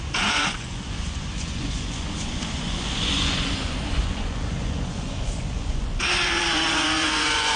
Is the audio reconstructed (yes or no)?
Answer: yes